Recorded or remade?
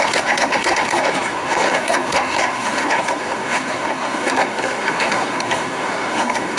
remade